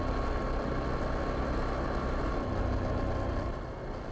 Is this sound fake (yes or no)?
no